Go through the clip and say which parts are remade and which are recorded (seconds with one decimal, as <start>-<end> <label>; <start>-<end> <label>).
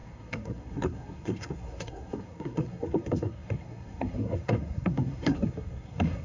0.0-6.2 remade